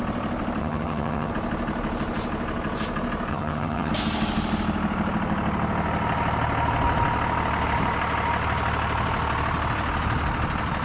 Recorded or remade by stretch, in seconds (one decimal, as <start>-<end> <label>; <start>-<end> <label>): 0.0-0.6 recorded; 0.6-1.3 remade; 1.3-3.3 recorded; 3.3-3.9 remade; 3.9-10.8 recorded